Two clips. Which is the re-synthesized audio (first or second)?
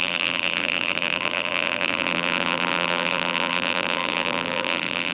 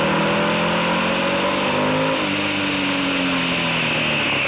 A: first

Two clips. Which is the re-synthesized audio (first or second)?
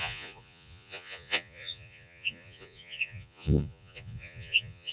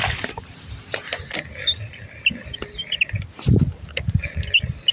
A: first